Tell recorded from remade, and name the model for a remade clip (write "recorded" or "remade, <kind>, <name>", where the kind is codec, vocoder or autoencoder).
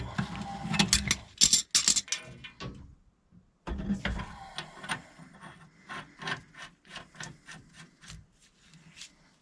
recorded